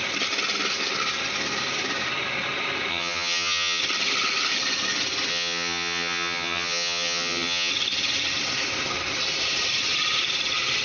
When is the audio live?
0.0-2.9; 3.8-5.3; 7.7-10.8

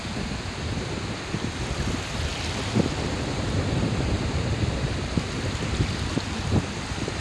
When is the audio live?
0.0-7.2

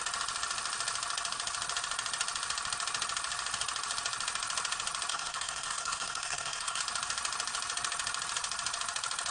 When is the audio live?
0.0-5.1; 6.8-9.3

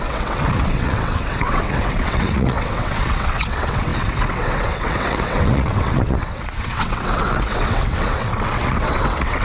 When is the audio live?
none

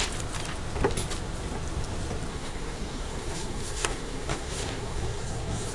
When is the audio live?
0.0-2.3

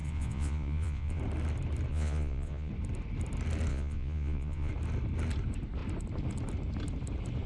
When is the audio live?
1.2-1.9; 2.7-3.7; 4.7-7.5

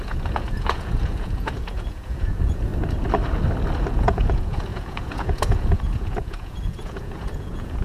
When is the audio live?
2.7-3.9

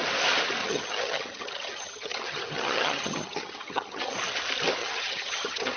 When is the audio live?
0.0-0.6; 4.1-4.8